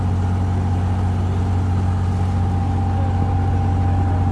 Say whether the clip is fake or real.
real